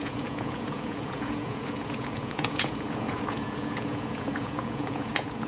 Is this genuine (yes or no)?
no